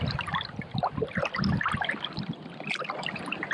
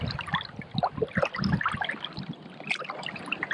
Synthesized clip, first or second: first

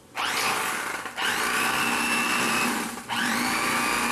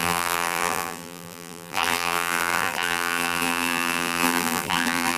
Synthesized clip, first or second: second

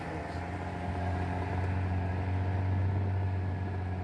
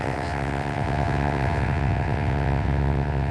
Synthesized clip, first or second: second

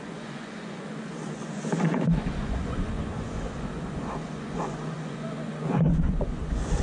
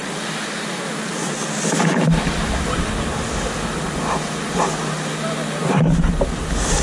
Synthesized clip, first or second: first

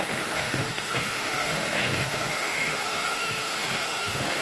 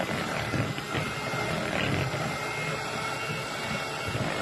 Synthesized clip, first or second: first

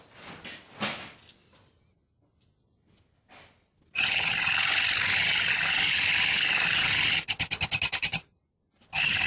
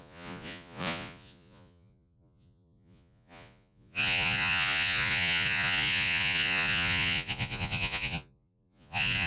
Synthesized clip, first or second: second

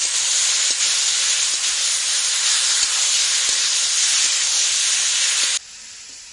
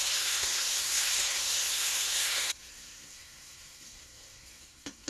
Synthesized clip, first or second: second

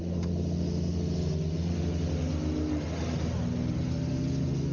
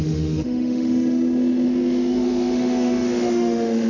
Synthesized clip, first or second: second